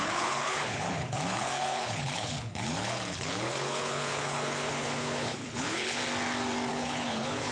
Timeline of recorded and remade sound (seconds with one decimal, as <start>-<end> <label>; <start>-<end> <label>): 0.0-6.0 remade; 6.0-6.7 recorded; 6.7-7.5 remade